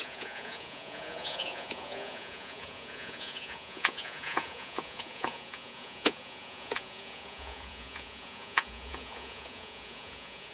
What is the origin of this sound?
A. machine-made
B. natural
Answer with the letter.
A